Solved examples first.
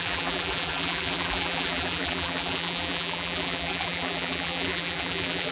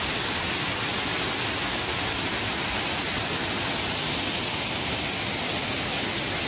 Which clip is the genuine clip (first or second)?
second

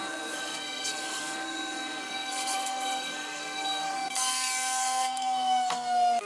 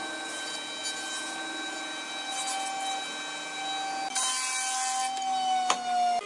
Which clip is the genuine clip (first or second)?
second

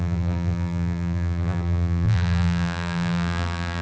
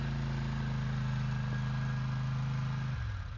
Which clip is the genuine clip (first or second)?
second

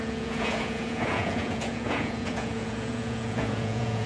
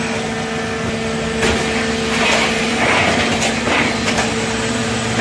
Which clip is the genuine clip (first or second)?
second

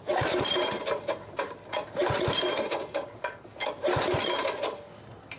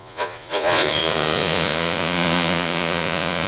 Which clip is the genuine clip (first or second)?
first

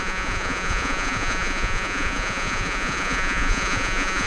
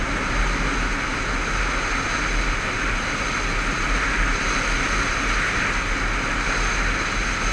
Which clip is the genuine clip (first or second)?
second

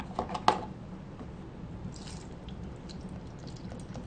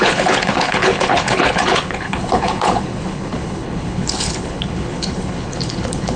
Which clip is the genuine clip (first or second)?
first